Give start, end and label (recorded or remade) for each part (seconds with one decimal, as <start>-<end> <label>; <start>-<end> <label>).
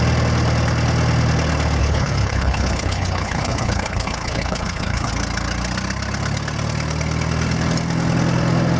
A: 0.0-1.8 recorded; 1.8-5.1 remade; 5.1-8.8 recorded